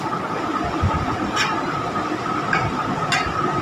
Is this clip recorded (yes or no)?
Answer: no